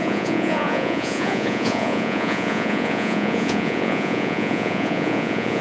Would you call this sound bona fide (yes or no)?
no